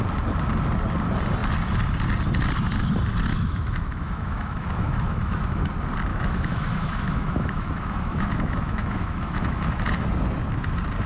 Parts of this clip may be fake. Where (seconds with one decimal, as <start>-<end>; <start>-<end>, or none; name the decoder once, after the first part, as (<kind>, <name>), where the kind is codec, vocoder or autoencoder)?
3.3-5.6 (autoencoder, DAC-VAE); 6.1-9.8